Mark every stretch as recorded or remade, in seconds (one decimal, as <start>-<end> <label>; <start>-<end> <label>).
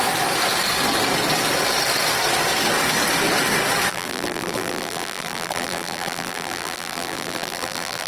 0.0-3.9 recorded; 3.9-8.1 remade